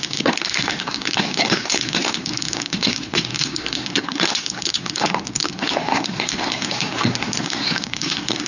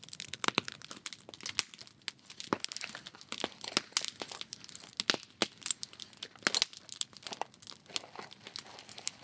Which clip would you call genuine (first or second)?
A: second